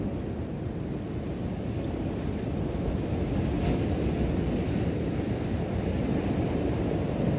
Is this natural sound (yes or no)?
yes